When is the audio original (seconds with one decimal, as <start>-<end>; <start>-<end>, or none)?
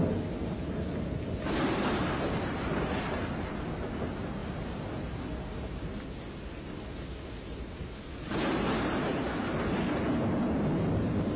0.0-11.4